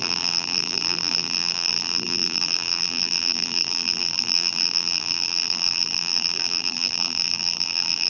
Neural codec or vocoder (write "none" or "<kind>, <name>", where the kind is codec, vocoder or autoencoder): vocoder, BigVGAN v2